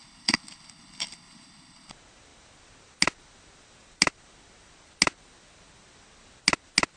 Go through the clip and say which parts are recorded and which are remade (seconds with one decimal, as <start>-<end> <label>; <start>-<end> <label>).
0.0-1.9 remade; 1.9-7.0 recorded